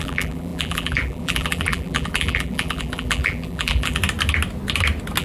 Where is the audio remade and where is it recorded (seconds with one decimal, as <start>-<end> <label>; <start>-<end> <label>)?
0.0-4.0 remade; 4.0-5.2 recorded